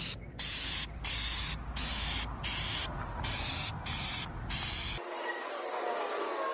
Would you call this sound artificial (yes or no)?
no